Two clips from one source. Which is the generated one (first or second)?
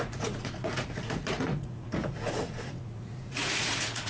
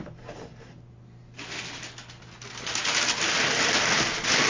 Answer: first